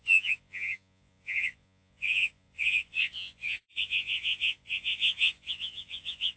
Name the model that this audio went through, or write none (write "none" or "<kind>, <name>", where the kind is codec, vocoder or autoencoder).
vocoder, Vocos